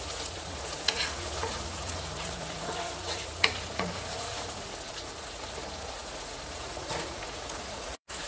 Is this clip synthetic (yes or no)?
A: yes